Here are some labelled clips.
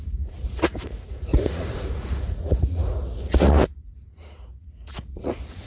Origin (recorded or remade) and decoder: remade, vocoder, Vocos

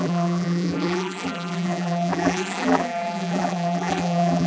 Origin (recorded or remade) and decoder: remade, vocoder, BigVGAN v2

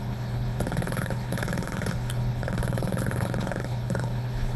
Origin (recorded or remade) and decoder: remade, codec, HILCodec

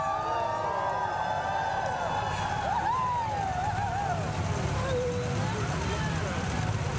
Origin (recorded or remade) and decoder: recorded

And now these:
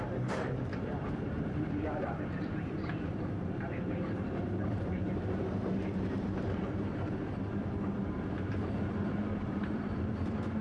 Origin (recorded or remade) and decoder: remade, vocoder, BigVGAN v2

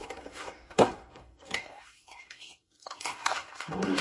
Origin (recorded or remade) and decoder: remade, codec, SNAC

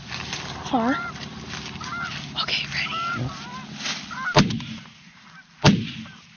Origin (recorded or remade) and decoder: recorded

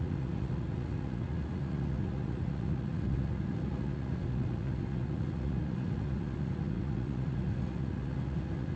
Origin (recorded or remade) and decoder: remade, vocoder, Vocos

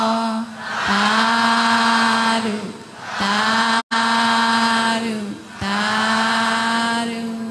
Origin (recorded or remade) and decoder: recorded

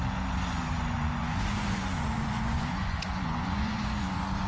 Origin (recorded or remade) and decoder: remade, vocoder, Vocos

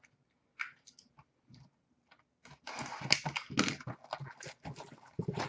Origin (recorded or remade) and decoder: recorded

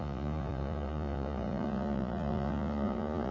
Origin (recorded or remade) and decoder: remade, vocoder, Vocos